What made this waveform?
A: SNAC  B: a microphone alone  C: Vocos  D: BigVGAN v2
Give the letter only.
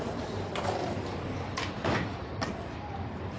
D